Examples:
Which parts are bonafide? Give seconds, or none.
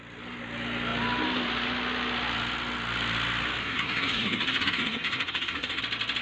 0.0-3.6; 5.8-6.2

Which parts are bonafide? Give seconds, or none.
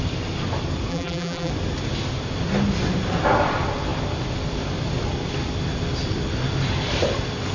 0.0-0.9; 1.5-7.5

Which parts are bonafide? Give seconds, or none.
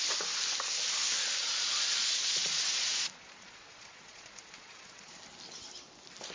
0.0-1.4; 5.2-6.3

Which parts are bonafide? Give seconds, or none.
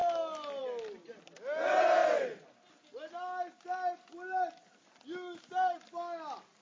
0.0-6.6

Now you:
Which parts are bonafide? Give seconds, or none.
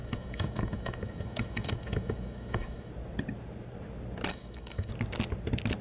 2.9-4.3; 4.9-5.8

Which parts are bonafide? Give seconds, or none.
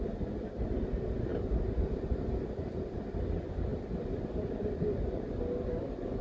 0.0-6.2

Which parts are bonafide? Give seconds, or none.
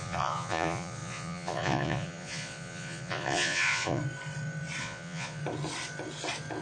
4.0-4.8; 5.4-6.6